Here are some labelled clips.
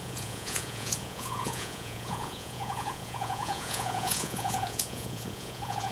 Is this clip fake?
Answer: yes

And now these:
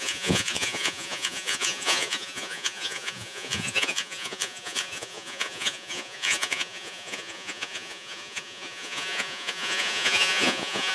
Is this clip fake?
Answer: yes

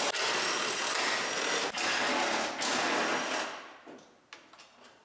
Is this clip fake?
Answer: no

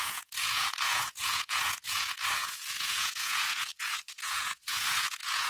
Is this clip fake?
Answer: yes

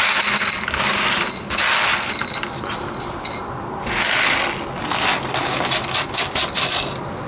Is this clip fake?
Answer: no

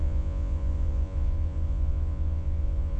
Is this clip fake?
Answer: yes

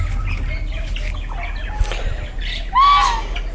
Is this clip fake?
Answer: no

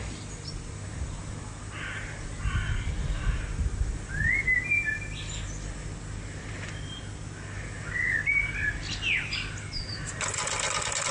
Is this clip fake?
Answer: no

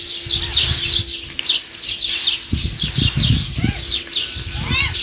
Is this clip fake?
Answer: no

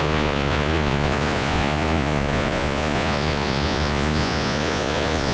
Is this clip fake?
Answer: yes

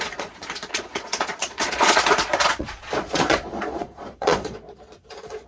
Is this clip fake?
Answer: yes